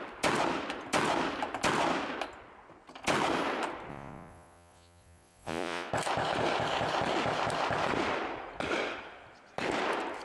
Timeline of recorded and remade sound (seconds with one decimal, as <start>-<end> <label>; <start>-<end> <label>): 0.0-3.9 recorded; 3.9-5.9 remade; 5.9-10.2 recorded